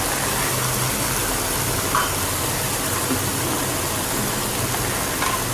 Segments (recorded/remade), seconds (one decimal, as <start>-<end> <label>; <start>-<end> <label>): 0.0-1.2 recorded; 1.2-4.5 remade; 4.5-5.5 recorded